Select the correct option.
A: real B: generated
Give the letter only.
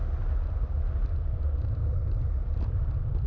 A